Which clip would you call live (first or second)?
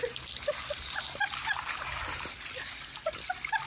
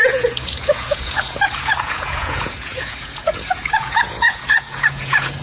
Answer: first